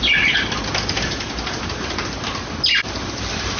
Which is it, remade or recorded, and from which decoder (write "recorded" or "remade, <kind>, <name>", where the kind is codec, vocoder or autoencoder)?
recorded